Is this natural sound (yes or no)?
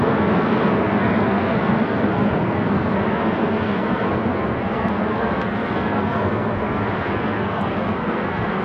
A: no